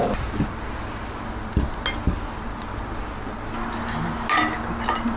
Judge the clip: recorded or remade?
recorded